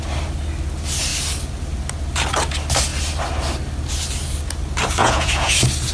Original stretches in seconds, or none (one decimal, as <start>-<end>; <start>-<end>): 0.0-5.0; 5.5-5.9